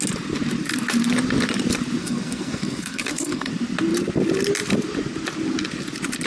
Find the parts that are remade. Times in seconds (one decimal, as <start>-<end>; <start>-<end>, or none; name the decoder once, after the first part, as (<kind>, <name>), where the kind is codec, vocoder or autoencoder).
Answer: 2.0-3.5 (codec, SNAC)